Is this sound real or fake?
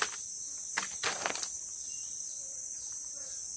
real